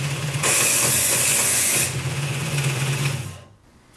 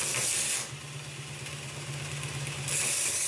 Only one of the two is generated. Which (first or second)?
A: first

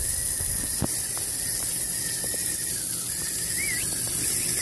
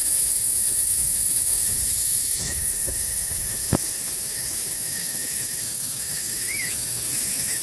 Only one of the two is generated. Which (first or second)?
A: second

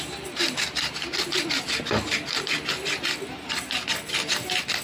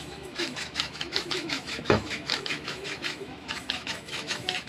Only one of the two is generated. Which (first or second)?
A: second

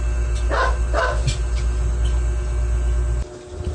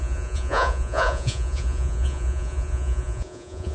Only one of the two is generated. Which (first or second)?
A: second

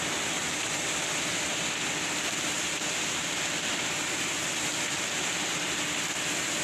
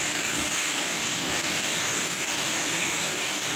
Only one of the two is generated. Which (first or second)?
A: second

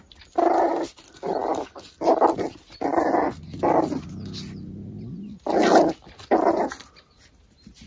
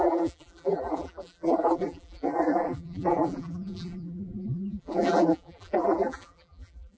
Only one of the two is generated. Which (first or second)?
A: second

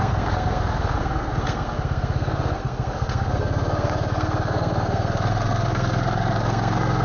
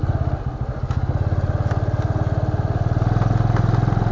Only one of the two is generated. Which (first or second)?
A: first